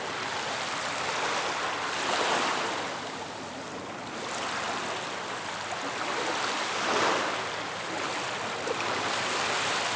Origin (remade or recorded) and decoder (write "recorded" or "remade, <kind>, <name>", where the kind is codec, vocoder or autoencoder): recorded